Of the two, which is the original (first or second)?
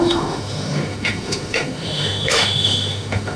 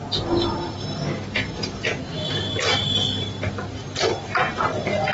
second